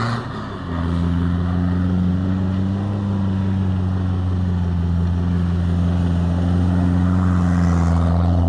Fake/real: real